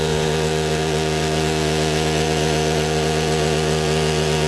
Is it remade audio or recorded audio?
remade